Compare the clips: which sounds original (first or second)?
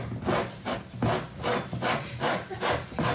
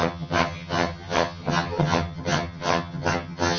first